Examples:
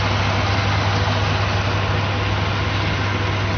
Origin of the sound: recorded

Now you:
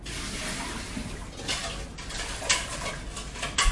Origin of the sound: recorded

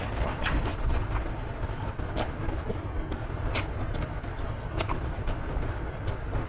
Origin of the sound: recorded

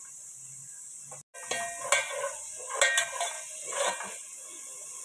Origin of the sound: recorded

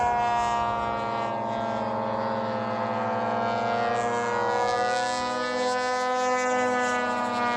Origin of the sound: recorded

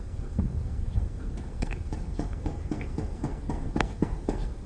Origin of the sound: remade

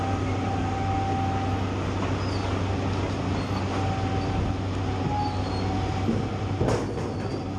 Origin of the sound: recorded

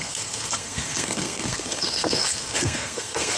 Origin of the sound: remade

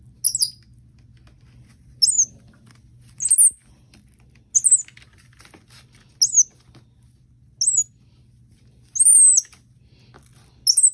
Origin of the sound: recorded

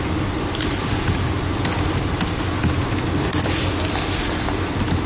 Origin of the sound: recorded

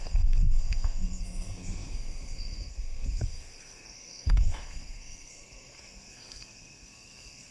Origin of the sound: remade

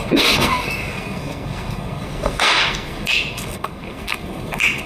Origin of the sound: remade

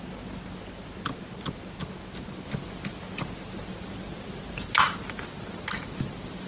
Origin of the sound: recorded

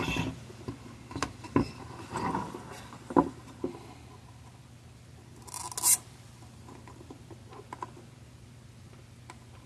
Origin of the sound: recorded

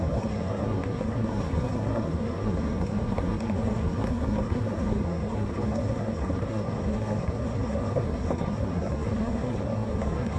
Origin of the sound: remade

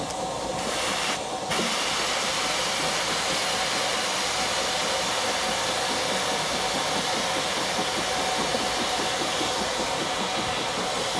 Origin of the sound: recorded